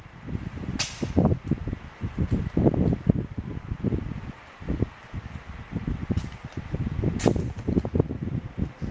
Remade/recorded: recorded